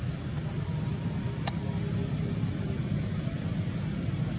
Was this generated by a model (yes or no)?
no